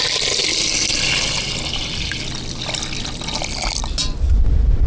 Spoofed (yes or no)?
no